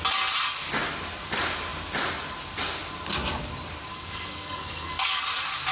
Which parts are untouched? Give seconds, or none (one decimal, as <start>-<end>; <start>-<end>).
0.0-3.9; 5.2-5.7